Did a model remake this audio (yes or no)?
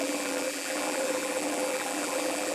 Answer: yes